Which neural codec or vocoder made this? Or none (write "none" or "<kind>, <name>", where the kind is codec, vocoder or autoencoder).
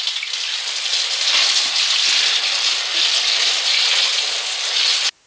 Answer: none